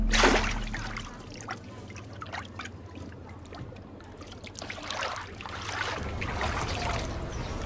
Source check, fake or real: real